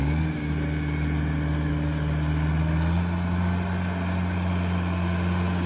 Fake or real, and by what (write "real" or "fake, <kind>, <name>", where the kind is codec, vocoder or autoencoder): real